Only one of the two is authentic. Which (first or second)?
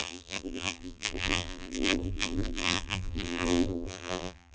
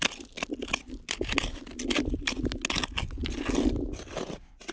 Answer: second